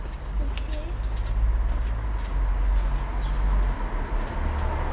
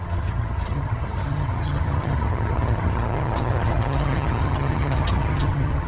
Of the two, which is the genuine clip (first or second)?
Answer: first